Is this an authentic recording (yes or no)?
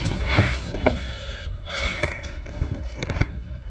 no